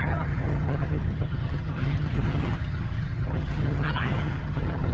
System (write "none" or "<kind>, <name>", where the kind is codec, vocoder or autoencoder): vocoder, HiFi-GAN